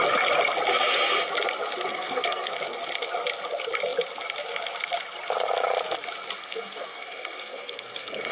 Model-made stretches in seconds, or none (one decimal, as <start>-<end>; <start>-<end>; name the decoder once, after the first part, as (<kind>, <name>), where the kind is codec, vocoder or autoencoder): 1.9-2.5 (codec, SNAC); 6.4-8.3